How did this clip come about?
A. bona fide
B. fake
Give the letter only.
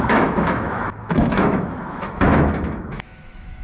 B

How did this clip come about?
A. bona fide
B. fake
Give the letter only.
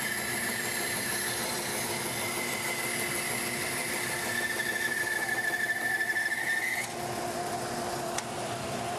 A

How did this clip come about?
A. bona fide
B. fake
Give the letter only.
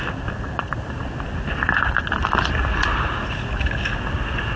A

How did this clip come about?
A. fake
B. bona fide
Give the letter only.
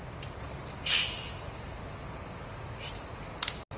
B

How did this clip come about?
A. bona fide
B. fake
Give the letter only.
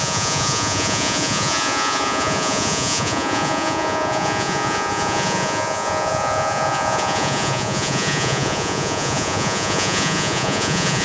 B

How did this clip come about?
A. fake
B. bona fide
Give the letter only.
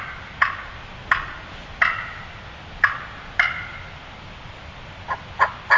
B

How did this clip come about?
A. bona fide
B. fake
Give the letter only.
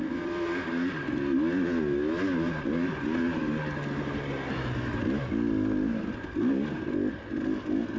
A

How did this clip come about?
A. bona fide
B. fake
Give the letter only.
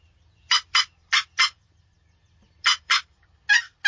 A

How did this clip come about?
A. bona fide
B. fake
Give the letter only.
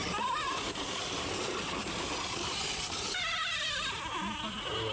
A